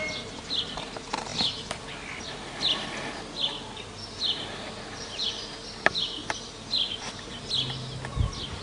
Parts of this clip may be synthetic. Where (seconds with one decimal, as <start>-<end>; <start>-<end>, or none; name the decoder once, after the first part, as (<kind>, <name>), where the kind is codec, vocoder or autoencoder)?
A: none